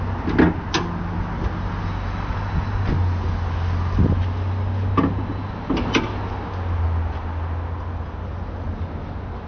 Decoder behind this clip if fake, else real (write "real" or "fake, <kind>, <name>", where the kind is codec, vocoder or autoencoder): real